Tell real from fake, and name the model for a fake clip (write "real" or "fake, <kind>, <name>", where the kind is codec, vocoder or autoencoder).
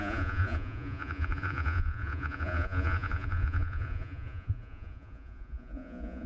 fake, vocoder, Vocos